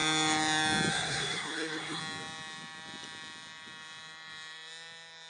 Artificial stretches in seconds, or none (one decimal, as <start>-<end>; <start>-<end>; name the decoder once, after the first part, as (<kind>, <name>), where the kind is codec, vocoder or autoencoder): 0.9-2.0 (codec, SNAC)